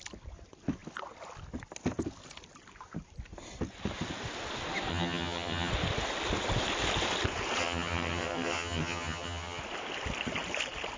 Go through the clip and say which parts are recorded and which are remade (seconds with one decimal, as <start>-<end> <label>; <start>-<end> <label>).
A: 0.0-4.9 recorded; 4.9-5.7 remade; 5.7-7.6 recorded; 7.6-9.6 remade; 9.6-11.0 recorded